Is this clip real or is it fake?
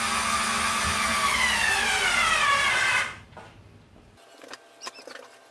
real